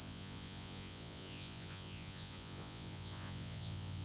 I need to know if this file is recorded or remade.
remade